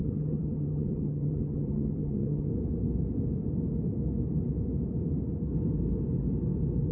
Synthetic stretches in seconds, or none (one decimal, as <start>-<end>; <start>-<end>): 0.0-2.5